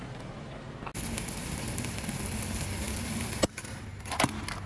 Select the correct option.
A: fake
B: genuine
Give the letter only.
B